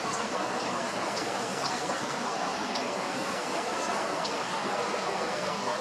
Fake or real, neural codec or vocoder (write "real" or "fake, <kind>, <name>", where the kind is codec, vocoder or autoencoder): fake, codec, SNAC